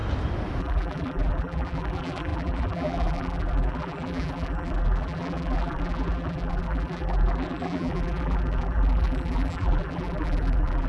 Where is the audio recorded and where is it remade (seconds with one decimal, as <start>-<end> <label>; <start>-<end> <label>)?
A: 0.0-0.6 recorded; 0.6-10.9 remade